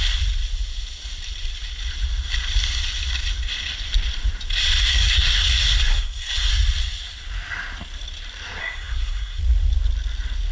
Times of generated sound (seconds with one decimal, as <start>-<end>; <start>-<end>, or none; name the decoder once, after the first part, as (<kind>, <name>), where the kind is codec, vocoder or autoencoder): 4.9-6.5 (codec, SNAC); 8.6-9.4